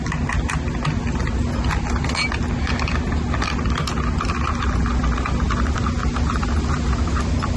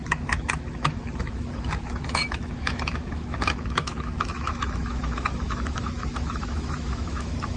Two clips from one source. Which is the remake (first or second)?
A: second